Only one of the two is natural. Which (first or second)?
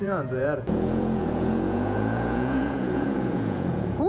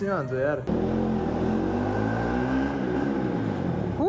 second